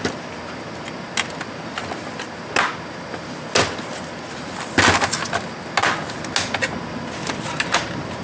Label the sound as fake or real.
real